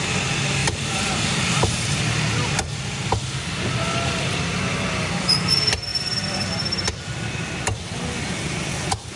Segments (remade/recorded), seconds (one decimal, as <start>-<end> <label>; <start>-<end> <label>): 0.0-0.6 recorded; 0.6-2.0 remade; 2.0-9.2 recorded